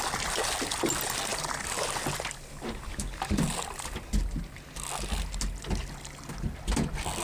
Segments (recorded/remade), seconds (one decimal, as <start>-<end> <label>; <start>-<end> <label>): 0.0-7.2 recorded